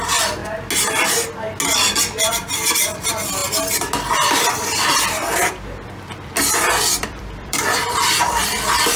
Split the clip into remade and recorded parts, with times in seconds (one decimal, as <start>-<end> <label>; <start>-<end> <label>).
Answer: 0.0-0.4 remade; 0.4-2.3 recorded; 2.3-3.4 remade; 3.4-4.1 recorded; 4.1-6.3 remade; 6.3-7.0 recorded; 7.0-9.0 remade